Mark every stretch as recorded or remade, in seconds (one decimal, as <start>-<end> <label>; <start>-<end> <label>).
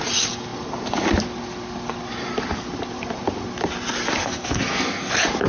0.0-4.2 recorded; 4.2-5.1 remade; 5.1-5.5 recorded